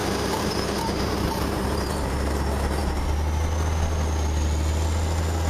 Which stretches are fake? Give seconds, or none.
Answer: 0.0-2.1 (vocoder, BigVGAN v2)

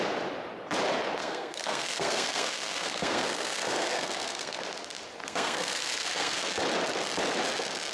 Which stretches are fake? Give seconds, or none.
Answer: 1.2-4.6 (codec, SNAC); 5.2-6.6

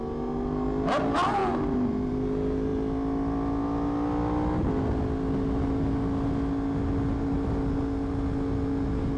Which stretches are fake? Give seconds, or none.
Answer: none

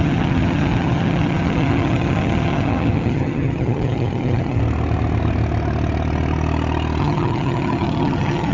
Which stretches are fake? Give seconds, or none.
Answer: 0.0-4.6 (vocoder, HiFi-GAN); 7.0-8.5

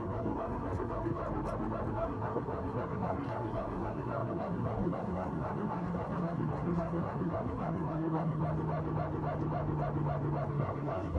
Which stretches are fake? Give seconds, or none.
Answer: 0.0-1.2 (codec, SNAC); 1.9-8.4; 10.5-11.2